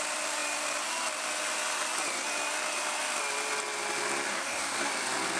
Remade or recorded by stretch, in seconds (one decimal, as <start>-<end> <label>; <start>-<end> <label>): 0.0-4.3 recorded; 4.3-4.8 remade; 4.8-5.4 recorded